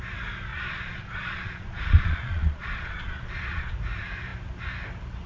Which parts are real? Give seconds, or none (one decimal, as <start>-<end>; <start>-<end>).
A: 0.0-0.5; 3.7-5.3